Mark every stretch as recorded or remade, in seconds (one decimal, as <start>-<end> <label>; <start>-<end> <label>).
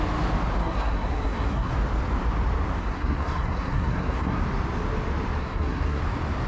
0.0-0.6 recorded; 0.6-1.7 remade; 1.7-2.8 recorded; 2.8-4.4 remade; 4.4-5.4 recorded; 5.4-6.0 remade; 6.0-6.5 recorded